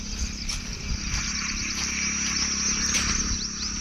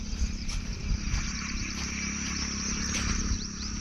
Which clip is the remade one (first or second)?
second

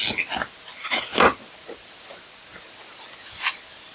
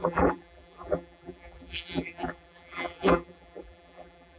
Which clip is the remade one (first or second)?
second